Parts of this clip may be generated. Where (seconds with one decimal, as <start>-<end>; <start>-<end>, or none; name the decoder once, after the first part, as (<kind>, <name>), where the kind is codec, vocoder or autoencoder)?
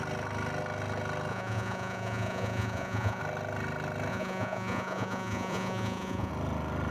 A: 1.3-3.2 (vocoder, Vocos); 4.1-6.3